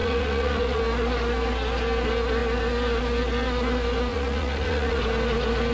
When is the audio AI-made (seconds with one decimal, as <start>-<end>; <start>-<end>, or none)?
0.0-0.8; 4.1-5.0